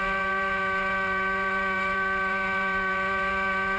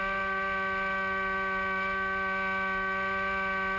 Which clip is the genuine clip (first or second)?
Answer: second